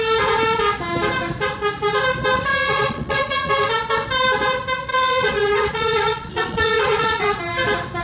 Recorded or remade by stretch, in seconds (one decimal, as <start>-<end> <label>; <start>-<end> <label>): 0.0-2.5 recorded; 2.5-3.5 remade; 3.5-4.9 recorded; 4.9-7.4 remade; 7.4-8.0 recorded